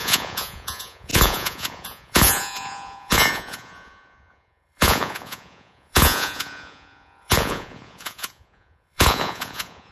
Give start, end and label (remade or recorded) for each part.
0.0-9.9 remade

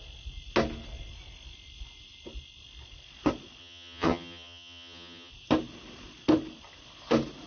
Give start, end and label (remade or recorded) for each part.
0.0-3.6 recorded; 3.6-5.3 remade; 5.3-7.5 recorded